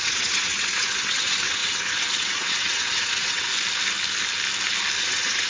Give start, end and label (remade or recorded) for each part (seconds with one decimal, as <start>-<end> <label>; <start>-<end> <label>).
0.0-3.5 remade; 3.5-5.0 recorded; 5.0-5.5 remade